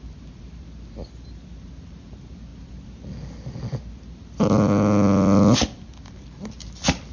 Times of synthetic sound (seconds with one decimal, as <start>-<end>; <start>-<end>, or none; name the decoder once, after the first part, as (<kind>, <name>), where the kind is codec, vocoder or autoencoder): none

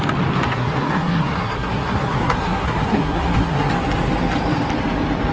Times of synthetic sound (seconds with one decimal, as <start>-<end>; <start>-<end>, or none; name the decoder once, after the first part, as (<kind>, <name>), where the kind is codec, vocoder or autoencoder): 0.5-3.7 (codec, SNAC)

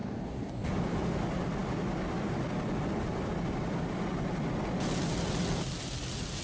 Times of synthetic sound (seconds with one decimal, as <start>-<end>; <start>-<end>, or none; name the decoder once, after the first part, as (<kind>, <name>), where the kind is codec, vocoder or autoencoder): 0.0-0.7 (codec, DAC)

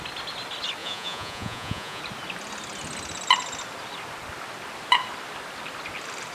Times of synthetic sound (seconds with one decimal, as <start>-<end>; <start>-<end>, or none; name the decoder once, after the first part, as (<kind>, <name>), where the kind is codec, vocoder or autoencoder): 0.8-2.0 (vocoder, Vocos)

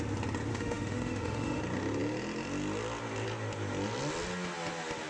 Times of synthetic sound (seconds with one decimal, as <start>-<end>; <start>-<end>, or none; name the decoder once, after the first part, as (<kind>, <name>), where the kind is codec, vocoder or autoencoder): 0.5-1.6 (autoencoder, DAC-VAE)

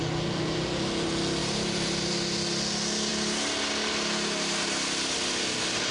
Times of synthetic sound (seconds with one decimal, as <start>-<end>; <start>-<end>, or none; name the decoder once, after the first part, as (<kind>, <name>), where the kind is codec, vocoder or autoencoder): 1.4-2.1 (vocoder, BigVGAN v2)